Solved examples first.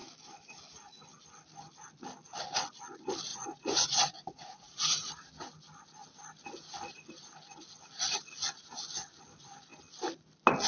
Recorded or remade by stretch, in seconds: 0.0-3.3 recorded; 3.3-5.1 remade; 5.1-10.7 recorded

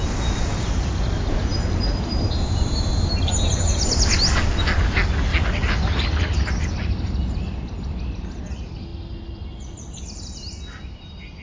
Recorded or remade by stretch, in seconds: 0.0-1.5 recorded; 1.5-2.3 remade; 2.3-11.4 recorded

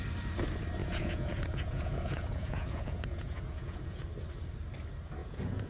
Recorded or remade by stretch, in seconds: 0.0-0.8 recorded; 0.8-4.0 remade; 4.0-5.2 recorded; 5.2-5.7 remade

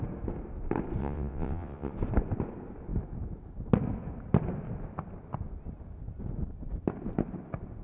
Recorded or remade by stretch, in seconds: 0.0-1.0 recorded; 1.0-1.9 remade; 1.9-7.8 recorded

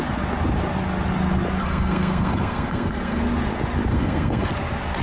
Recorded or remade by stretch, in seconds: 0.0-1.6 recorded; 1.6-3.2 remade; 3.2-3.9 recorded; 3.9-4.5 remade; 4.5-5.0 recorded

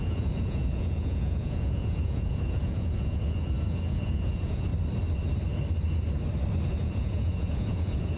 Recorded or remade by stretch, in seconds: 0.0-4.7 remade; 4.7-6.7 recorded; 6.7-8.2 remade